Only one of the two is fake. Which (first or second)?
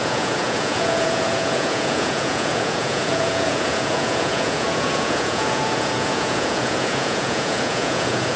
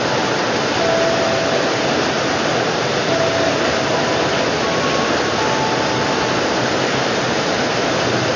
first